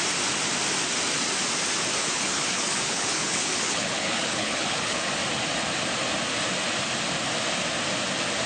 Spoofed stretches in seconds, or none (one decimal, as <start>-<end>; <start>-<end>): 2.0-5.1

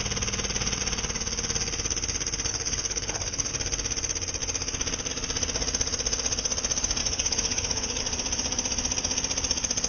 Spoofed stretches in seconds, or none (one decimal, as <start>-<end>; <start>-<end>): 2.5-3.5; 7.0-8.0

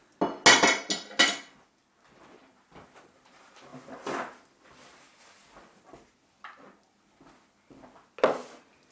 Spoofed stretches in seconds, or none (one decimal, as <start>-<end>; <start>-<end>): none

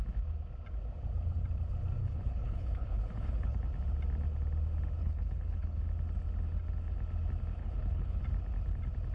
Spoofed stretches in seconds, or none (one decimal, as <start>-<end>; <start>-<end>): 2.0-3.6; 5.0-5.8; 7.6-8.2

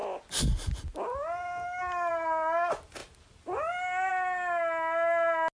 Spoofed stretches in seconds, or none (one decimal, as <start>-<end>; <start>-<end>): none

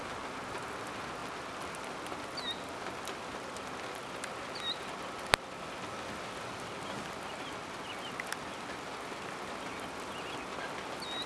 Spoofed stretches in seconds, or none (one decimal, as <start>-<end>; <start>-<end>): none

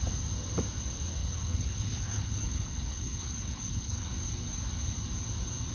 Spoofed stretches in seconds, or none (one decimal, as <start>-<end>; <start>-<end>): 1.2-4.1